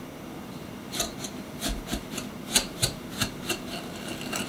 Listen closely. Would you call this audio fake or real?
real